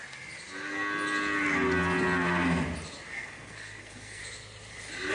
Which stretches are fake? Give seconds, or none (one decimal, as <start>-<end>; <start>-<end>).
3.1-4.2